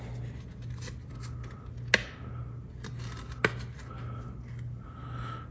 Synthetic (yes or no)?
no